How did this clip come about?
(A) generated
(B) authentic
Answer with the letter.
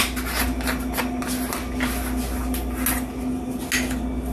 B